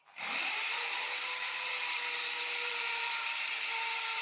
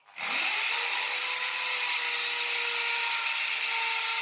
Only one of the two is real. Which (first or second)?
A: second